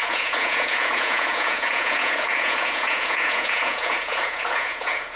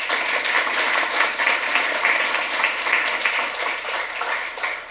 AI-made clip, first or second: first